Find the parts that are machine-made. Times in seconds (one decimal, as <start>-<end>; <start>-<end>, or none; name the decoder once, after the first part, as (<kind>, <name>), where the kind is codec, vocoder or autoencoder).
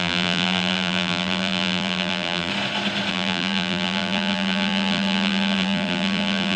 0.0-2.5 (vocoder, BigVGAN v2); 3.1-6.6